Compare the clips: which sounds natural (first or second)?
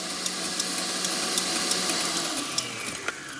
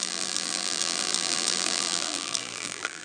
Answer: first